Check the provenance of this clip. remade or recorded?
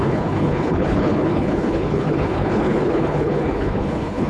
remade